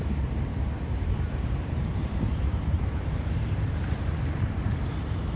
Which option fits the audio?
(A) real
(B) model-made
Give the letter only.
B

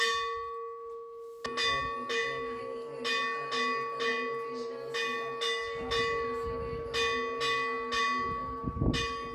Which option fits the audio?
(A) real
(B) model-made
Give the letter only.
A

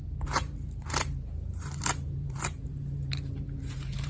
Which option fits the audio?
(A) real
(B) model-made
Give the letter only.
B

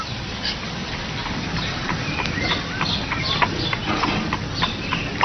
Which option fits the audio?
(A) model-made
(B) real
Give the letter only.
A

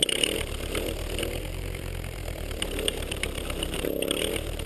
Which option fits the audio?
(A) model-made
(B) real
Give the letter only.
A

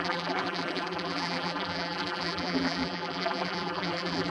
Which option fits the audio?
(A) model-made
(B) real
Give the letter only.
A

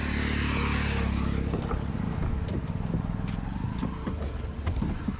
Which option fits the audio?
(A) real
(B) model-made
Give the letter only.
A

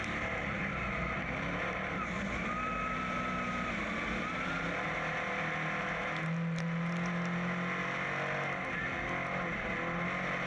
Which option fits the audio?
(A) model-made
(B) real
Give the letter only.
B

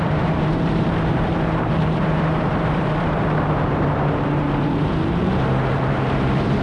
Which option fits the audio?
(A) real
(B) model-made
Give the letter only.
B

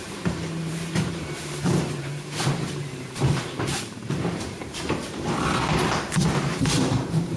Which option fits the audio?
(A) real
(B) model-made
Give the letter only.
B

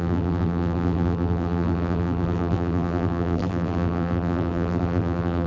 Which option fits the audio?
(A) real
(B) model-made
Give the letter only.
B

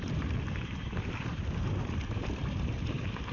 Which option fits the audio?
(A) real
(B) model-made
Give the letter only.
B